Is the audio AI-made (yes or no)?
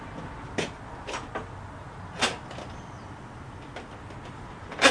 no